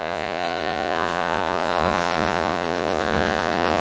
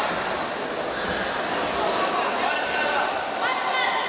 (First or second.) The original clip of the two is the second